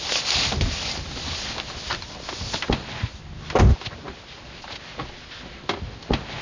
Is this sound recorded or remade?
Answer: recorded